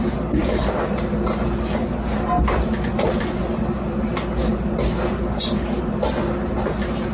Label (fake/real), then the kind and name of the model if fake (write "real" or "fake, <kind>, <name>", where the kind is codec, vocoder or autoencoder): real